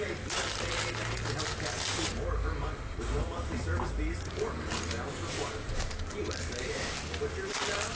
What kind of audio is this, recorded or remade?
recorded